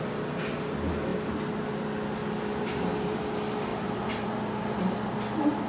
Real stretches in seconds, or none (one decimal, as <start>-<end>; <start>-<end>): 0.0-2.2; 3.2-3.7; 4.2-5.7